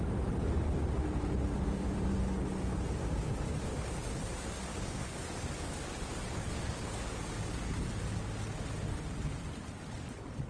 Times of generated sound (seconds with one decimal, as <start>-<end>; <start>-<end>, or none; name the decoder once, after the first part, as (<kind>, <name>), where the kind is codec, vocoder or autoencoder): 4.7-7.9 (codec, DAC)